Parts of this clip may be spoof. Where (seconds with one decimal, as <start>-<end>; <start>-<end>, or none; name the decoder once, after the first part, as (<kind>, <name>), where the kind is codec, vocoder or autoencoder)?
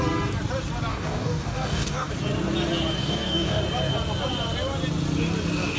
0.9-2.1 (codec, DAC); 3.0-3.6